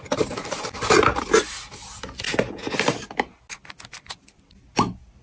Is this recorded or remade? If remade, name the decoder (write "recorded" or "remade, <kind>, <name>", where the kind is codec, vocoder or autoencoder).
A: recorded